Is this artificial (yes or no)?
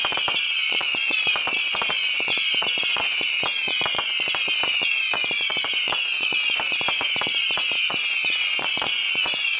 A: yes